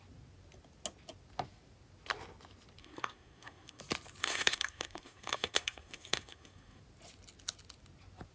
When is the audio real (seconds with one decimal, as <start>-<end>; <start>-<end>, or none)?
0.0-2.8; 3.8-4.2; 6.8-8.3